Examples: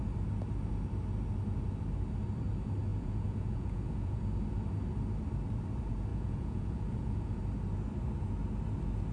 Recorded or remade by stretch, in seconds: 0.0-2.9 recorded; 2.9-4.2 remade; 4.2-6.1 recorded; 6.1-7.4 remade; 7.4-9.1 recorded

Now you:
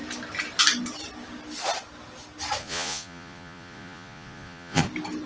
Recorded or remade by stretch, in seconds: 0.0-2.6 recorded; 2.6-4.8 remade; 4.8-5.3 recorded

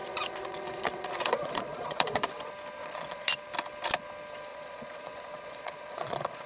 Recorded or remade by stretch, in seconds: 0.0-2.3 remade; 2.3-2.8 recorded; 2.8-3.3 remade; 3.3-4.5 recorded; 4.5-6.5 remade